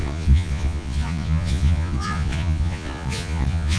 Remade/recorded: remade